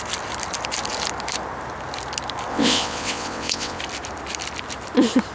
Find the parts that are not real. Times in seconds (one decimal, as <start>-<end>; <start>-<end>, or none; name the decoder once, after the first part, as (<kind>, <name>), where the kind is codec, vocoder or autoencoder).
2.5-3.8 (vocoder, WaveNeXt)

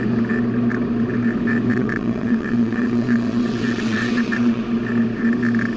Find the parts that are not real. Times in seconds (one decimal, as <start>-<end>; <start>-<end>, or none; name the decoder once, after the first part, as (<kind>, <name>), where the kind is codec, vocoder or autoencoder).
1.7-4.6 (vocoder, WaveNeXt)

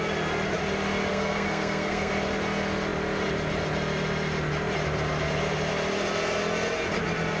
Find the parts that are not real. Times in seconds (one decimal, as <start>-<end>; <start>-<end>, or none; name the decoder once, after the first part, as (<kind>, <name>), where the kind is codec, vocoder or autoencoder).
1.1-2.1 (codec, SNAC)

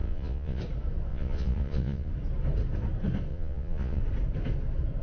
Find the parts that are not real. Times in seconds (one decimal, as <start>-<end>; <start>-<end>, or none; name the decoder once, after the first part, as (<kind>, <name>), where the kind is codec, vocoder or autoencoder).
0.0-0.6 (vocoder, Vocos); 1.1-2.1; 3.3-4.0

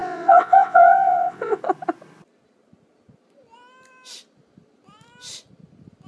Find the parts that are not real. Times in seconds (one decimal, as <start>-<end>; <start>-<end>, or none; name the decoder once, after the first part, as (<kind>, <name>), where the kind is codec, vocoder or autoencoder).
0.0-1.6 (vocoder, WaveNeXt)

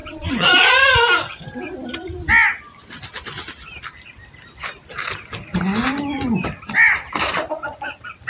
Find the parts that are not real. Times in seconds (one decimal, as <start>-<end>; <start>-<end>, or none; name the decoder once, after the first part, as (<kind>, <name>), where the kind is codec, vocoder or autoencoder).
0.0-0.7 (vocoder, Vocos)

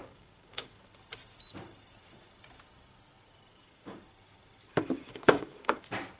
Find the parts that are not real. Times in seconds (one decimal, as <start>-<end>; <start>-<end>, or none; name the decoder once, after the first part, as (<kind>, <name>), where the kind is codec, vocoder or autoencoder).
0.0-0.8 (codec, DAC); 3.5-4.0; 5.0-5.8